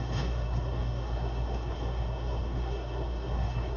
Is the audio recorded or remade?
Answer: remade